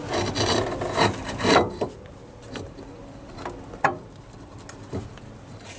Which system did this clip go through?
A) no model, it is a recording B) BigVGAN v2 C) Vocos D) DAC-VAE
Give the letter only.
A